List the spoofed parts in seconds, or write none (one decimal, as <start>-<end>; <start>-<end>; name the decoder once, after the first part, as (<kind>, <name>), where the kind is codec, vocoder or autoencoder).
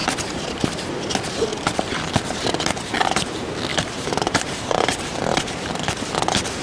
1.5-2.1 (vocoder, BigVGAN v2); 3.7-5.7